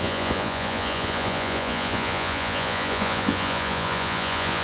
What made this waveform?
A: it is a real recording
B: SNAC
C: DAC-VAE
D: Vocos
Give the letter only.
D